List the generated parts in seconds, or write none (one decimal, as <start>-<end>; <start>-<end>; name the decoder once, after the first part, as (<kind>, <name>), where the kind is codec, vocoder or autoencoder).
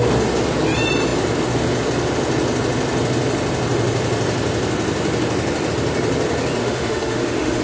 6.6-7.6 (autoencoder, DAC-VAE)